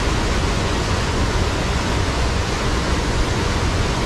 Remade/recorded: remade